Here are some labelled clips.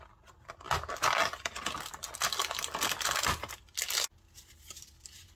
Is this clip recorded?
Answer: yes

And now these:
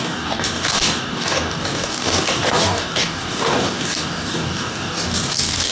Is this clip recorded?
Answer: no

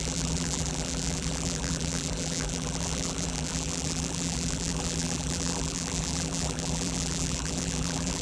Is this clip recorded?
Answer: no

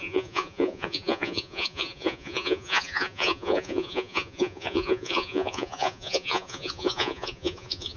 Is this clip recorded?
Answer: no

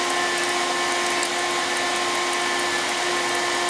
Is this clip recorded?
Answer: yes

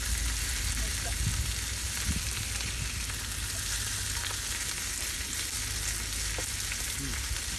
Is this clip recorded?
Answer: yes